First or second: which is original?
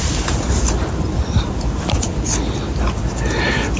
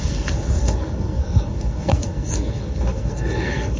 first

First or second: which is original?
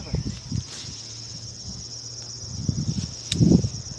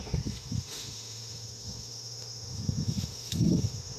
first